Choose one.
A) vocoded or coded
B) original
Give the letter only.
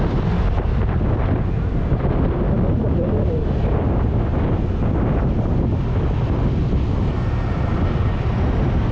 B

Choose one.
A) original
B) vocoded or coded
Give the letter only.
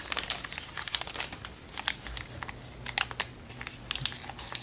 A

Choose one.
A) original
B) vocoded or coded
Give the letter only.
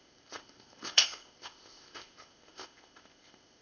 B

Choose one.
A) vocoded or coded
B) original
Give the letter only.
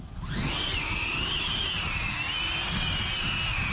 B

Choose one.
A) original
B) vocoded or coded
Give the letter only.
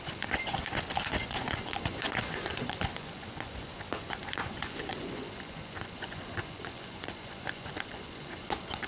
B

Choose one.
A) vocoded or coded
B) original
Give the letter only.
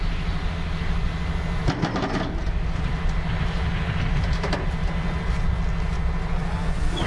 B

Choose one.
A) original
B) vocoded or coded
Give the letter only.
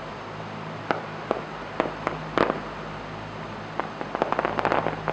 A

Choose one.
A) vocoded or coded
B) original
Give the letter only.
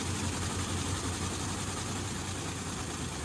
B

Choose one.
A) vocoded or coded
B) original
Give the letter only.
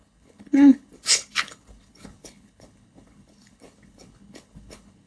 A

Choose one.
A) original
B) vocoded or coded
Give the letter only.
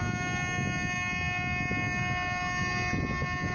A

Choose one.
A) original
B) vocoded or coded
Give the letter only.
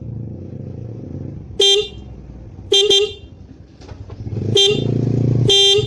A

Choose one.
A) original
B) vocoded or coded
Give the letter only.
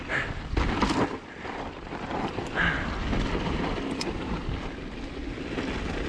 A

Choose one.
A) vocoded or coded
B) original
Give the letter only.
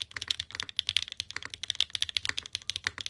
B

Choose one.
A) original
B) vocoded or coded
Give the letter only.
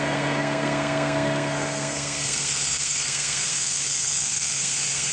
B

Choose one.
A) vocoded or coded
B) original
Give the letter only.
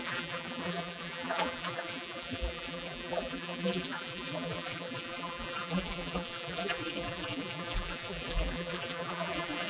A